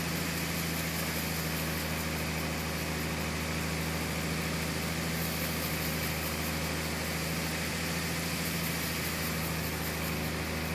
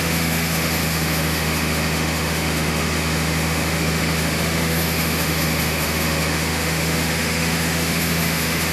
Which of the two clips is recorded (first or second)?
first